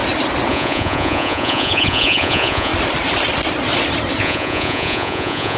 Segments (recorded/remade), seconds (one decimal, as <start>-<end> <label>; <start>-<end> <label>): 0.0-0.5 recorded; 0.5-2.7 remade; 2.7-4.2 recorded; 4.2-5.6 remade